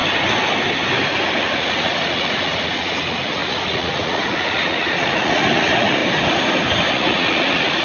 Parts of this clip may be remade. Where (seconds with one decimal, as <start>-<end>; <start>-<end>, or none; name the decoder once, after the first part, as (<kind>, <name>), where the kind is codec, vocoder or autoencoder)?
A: 1.4-6.0 (vocoder, Vocos); 6.9-7.8